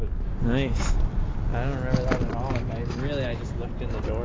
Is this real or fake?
real